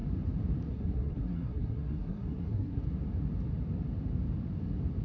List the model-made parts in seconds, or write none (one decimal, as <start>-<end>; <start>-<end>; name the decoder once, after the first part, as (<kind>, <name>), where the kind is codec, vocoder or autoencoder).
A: 0.7-2.8 (codec, SNAC)